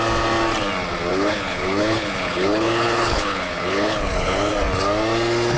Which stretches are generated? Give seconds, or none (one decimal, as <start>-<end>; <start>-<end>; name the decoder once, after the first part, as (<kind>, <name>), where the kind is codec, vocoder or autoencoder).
1.1-4.5 (codec, HILCodec)